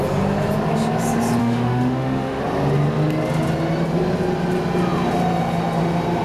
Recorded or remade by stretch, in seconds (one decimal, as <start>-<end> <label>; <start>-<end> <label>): 0.0-1.4 recorded; 1.4-2.4 remade; 2.4-6.2 recorded

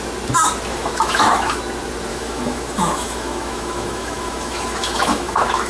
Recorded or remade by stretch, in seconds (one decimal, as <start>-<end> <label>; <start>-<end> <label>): 0.0-0.7 recorded; 0.7-1.6 remade; 1.6-2.1 recorded; 2.1-5.7 remade